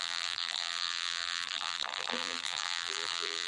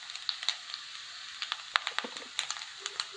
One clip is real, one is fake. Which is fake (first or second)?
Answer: first